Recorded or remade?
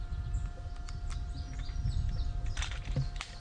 recorded